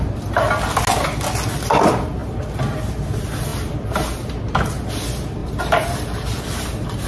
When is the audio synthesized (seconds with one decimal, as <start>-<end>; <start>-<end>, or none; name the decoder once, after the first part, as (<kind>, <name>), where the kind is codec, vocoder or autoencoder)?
5.4-6.4 (vocoder, BigVGAN v2)